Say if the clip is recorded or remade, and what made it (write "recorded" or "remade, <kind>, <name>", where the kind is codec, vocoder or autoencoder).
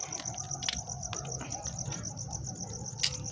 recorded